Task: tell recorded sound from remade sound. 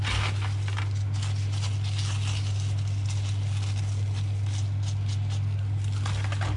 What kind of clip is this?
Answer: recorded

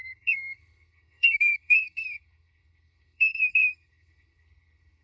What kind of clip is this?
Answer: remade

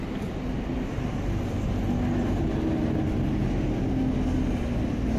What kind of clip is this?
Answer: recorded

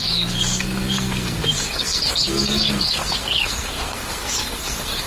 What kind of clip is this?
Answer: remade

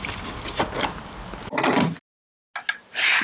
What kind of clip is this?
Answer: recorded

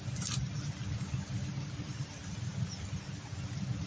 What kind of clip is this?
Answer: recorded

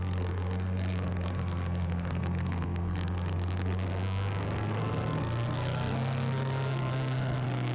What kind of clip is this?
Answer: remade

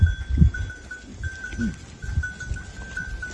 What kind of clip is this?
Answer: recorded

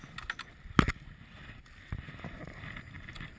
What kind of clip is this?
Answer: recorded